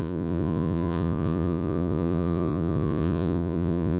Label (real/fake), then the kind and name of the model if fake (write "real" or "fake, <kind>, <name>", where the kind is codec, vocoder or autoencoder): fake, vocoder, Vocos